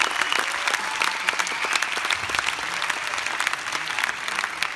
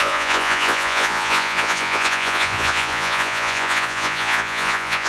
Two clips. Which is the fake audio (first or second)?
second